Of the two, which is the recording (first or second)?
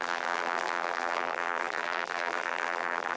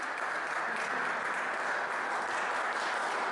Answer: second